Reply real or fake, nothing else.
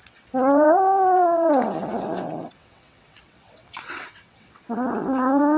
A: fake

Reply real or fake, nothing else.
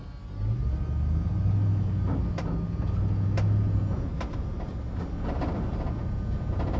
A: real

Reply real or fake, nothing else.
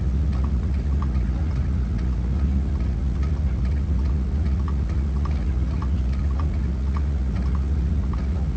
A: fake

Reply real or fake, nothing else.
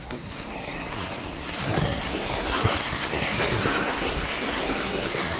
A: fake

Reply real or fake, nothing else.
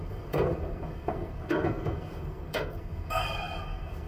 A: fake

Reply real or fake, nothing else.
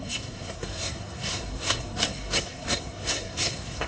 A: fake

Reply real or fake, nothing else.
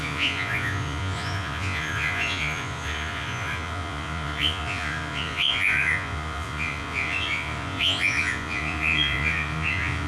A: fake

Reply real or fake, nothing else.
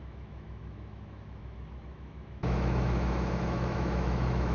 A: fake